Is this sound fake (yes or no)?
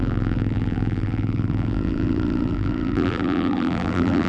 yes